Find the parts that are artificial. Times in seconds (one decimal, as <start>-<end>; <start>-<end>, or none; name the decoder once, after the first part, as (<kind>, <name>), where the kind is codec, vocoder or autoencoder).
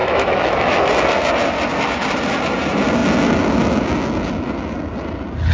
0.0-0.9 (autoencoder, DAC-VAE)